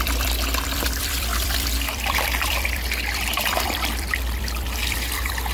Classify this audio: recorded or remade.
remade